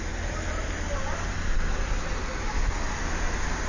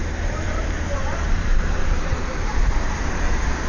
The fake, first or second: second